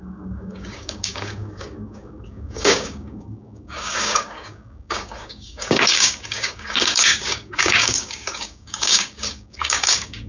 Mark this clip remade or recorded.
remade